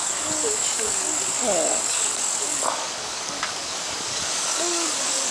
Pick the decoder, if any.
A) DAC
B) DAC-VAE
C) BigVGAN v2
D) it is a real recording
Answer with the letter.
A